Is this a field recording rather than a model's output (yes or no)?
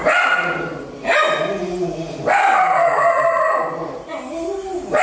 yes